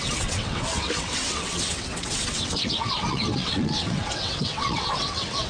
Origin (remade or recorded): remade